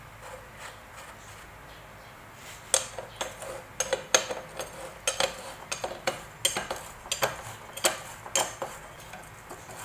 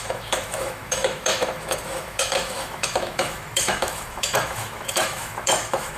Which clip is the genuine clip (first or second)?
first